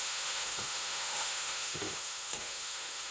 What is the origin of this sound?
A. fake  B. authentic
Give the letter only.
A